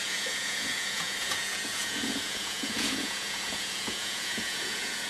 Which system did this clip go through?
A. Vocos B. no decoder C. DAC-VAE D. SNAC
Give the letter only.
A